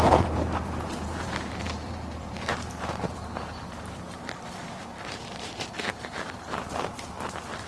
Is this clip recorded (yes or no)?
no